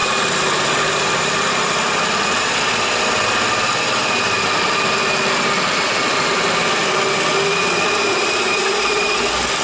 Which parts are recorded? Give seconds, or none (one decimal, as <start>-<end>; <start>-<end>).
0.0-9.6